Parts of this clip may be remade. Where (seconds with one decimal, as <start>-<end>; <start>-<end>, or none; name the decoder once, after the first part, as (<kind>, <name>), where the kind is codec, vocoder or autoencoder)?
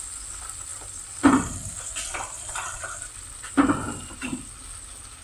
0.7-3.2 (vocoder, BigVGAN v2)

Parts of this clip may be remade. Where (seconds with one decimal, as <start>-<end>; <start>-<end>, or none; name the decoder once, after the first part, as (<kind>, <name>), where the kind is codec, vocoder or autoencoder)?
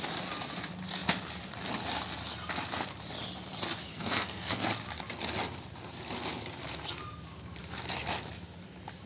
3.9-4.7 (codec, SNAC)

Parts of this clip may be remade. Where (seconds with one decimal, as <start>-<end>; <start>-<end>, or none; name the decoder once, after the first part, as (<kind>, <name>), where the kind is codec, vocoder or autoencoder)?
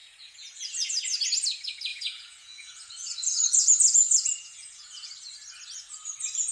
0.0-0.9 (vocoder, Vocos); 1.9-5.1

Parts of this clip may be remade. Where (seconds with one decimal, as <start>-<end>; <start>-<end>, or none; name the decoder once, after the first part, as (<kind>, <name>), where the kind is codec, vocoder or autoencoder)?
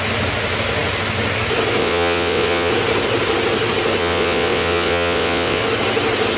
1.8-2.7 (vocoder, WaveNeXt); 4.0-5.6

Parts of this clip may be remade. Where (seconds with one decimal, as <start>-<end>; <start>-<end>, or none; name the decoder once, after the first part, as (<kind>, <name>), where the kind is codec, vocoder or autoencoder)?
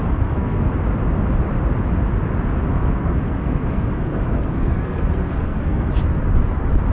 0.0-0.7 (codec, SNAC); 2.7-5.9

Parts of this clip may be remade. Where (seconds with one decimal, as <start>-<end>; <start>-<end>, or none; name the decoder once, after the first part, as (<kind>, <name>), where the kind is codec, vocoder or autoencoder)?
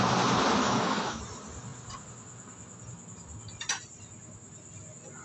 0.6-1.2 (codec, DAC)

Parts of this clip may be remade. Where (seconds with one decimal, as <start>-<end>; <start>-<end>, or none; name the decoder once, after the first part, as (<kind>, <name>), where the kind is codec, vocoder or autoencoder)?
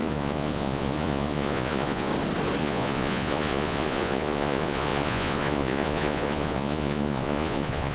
0.0-2.1 (vocoder, Vocos); 2.6-7.9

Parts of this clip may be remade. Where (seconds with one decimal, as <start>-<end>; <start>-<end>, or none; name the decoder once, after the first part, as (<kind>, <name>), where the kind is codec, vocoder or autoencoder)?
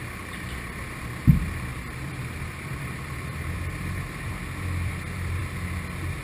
0.0-0.8 (vocoder, BigVGAN v2); 1.7-5.4